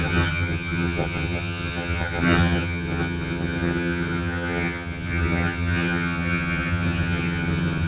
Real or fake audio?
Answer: fake